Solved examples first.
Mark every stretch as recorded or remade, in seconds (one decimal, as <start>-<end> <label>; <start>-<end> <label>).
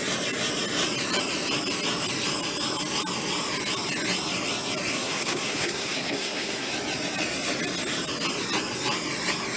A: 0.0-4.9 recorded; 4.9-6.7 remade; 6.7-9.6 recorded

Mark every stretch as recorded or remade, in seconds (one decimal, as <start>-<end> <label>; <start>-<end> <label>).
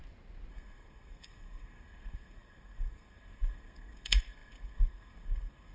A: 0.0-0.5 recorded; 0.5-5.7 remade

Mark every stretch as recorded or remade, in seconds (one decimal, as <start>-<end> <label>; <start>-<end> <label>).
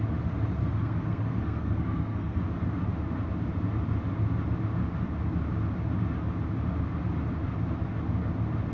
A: 0.0-0.6 recorded; 0.6-2.4 remade; 2.4-8.7 recorded